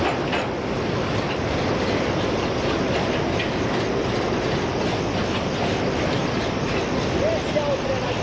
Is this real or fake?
real